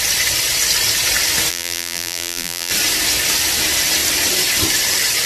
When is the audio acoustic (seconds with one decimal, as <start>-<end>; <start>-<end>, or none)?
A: 0.0-1.5; 2.7-5.3